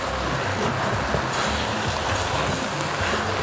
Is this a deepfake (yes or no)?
no